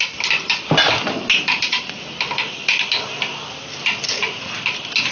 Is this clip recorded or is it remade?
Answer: recorded